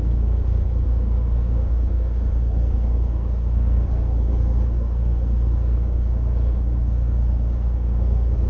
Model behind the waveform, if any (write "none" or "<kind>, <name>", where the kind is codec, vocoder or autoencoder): codec, SNAC